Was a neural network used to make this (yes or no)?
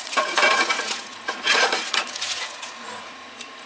yes